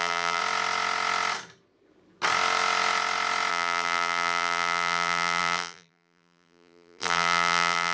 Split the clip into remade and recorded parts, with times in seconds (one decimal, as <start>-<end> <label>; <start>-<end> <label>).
0.0-0.4 remade; 0.4-3.5 recorded; 3.5-7.9 remade